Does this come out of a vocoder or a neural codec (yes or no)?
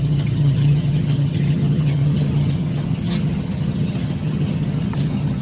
yes